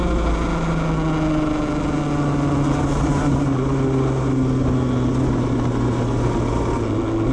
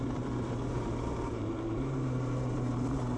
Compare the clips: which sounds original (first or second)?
first